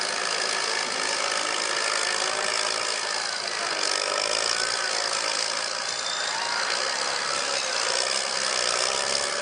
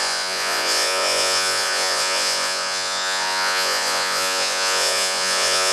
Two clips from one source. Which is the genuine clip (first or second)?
first